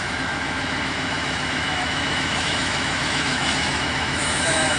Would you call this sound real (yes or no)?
no